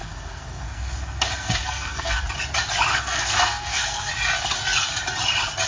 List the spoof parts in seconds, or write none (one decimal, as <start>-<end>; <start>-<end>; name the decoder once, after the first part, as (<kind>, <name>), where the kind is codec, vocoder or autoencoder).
0.0-2.2 (codec, SNAC); 2.9-4.1